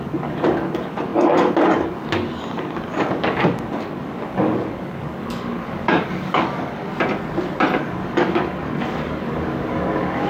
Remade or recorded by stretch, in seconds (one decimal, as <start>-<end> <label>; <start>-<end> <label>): 0.0-6.9 remade; 6.9-7.8 recorded; 7.8-10.3 remade